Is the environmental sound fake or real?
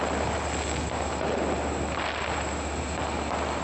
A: real